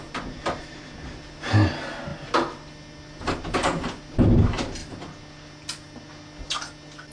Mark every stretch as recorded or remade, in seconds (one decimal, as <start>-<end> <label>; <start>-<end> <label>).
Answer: 0.0-7.1 recorded